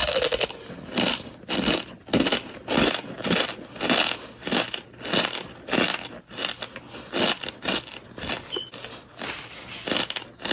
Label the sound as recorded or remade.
recorded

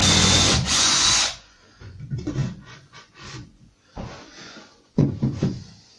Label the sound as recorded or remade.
remade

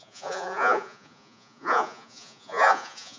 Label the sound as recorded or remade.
remade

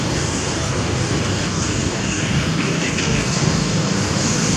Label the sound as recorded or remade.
remade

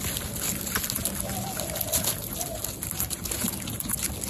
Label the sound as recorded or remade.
recorded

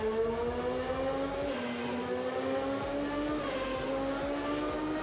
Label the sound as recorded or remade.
recorded